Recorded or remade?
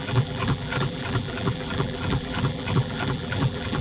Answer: remade